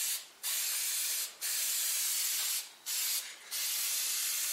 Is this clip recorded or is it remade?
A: recorded